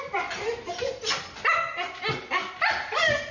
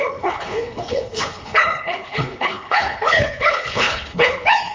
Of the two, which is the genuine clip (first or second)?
first